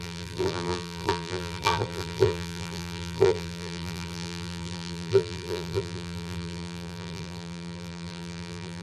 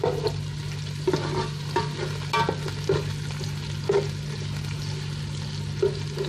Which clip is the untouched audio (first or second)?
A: second